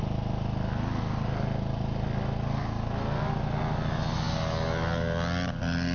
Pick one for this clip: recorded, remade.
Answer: recorded